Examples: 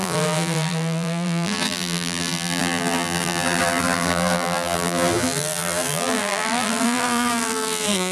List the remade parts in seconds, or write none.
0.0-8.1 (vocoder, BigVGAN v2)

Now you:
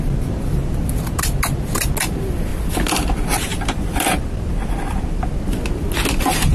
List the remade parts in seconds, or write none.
2.5-3.1 (vocoder, BigVGAN v2); 3.5-5.4

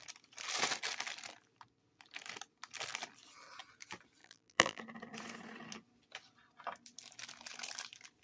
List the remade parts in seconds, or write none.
4.2-4.8 (vocoder, BigVGAN v2)

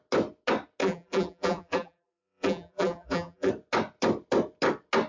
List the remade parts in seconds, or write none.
0.8-3.5 (vocoder, BigVGAN v2)

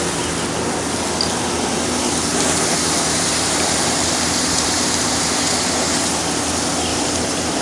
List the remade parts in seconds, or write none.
2.7-6.1 (vocoder, BigVGAN v2); 6.9-7.6